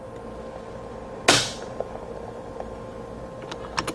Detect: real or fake real